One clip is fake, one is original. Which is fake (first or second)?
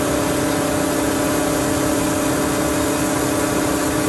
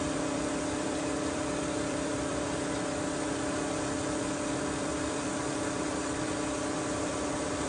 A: second